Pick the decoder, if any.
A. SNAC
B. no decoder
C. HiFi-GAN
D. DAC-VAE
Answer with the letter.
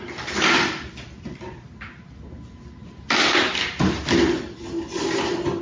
B